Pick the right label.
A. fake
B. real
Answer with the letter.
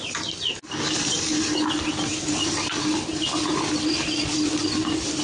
B